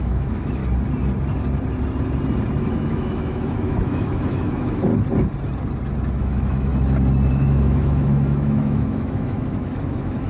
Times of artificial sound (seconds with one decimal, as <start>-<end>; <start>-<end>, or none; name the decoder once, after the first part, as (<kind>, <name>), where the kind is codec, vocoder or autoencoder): 0.0-0.6 (autoencoder, DAC-VAE); 2.7-4.9; 6.2-6.7; 7.3-10.3